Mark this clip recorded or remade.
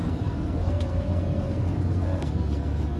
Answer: remade